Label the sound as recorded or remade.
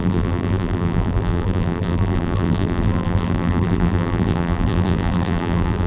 remade